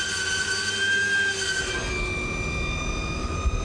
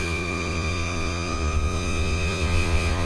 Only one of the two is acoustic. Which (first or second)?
first